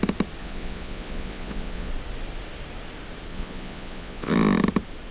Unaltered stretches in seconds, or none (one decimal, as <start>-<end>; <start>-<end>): 0.0-0.4; 1.9-3.3; 4.3-5.1